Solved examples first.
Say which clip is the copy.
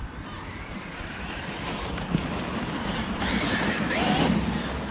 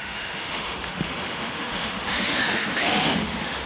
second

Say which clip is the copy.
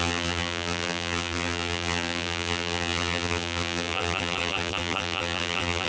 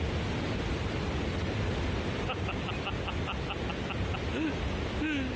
first